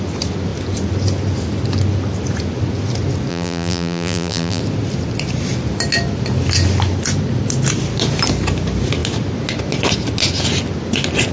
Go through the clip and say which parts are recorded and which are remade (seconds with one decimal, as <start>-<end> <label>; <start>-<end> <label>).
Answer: 0.0-3.3 recorded; 3.3-4.6 remade; 4.6-11.3 recorded